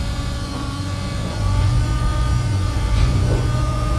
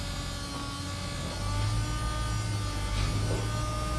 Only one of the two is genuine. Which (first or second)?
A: second